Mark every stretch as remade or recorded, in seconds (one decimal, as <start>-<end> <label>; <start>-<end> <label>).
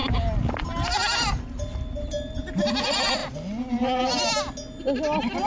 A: 0.0-5.5 recorded